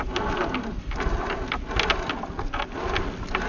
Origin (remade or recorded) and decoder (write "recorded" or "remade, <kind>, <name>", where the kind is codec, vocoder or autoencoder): recorded